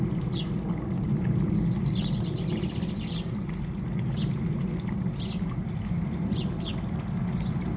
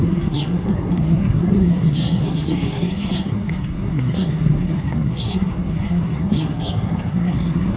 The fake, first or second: second